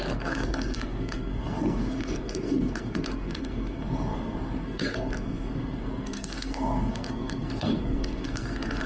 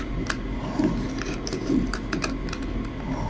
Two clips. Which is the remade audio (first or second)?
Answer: first